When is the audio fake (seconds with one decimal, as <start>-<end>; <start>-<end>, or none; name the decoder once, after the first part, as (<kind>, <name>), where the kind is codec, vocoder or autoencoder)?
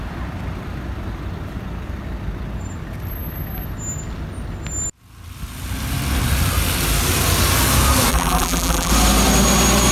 8.1-8.9 (vocoder, BigVGAN v2)